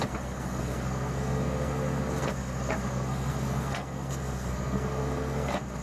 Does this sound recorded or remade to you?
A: remade